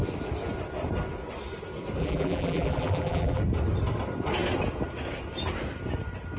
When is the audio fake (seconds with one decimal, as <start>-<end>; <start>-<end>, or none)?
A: 2.0-3.4